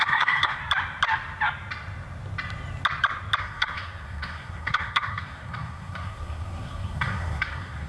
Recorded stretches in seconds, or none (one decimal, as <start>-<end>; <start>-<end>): 0.6-3.4

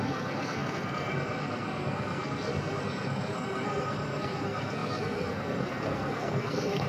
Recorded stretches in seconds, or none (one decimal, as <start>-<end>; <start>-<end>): none

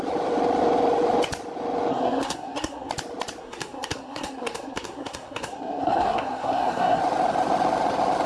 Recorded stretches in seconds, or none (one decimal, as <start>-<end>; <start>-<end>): 0.0-1.9; 2.9-3.4; 7.0-8.3

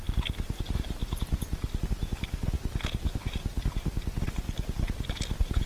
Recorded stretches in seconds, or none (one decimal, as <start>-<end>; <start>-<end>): 0.0-5.7

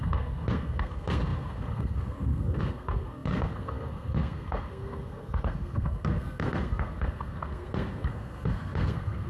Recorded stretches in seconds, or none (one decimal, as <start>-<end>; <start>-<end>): none

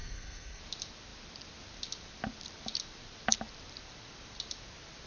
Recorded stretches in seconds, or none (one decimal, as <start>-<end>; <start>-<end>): 0.6-5.1

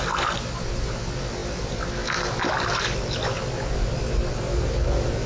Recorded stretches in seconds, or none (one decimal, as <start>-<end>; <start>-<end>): 0.0-5.3

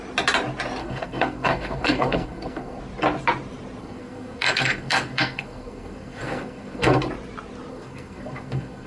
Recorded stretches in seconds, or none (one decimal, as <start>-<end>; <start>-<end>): 0.0-0.8; 2.8-3.8; 7.0-7.7